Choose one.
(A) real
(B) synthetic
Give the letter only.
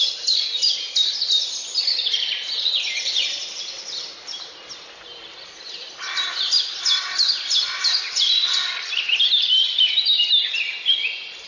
A